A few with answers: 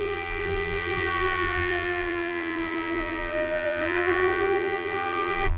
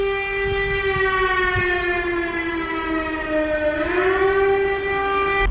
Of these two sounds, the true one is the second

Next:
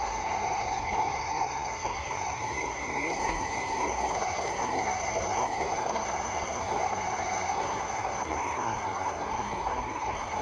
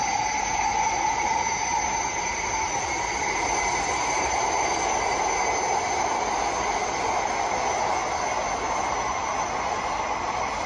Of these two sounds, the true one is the second